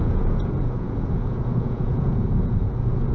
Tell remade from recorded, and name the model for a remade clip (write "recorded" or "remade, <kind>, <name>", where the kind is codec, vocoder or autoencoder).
remade, vocoder, Vocos